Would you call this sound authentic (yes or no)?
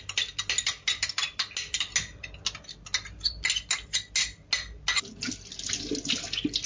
yes